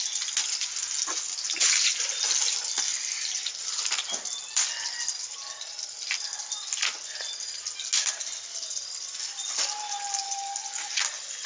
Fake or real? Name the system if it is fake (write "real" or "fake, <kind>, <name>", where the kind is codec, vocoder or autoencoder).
real